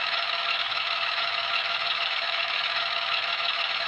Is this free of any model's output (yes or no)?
no